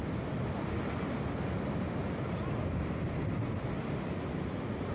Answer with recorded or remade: recorded